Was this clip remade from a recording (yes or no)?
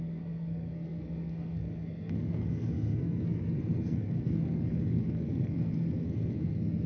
yes